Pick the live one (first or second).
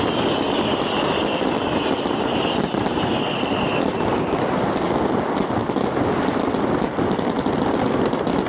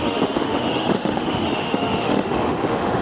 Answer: first